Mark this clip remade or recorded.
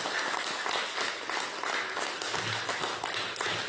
recorded